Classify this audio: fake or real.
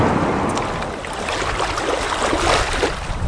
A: real